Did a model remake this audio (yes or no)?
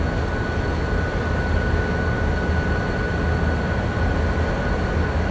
no